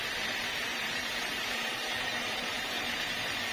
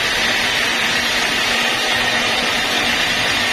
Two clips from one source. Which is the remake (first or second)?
first